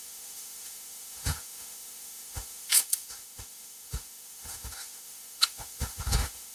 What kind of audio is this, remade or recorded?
remade